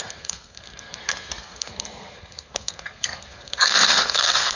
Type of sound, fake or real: fake